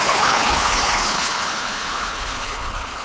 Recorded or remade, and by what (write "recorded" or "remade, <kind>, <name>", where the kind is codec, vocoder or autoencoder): remade, codec, HILCodec